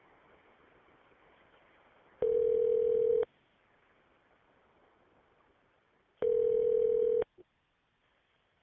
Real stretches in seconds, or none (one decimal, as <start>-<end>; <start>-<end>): 0.0-8.6